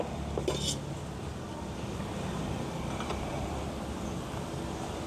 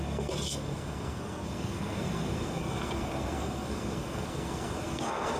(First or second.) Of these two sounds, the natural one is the first